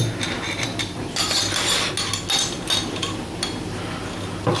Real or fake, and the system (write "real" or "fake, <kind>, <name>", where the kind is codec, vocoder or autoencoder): real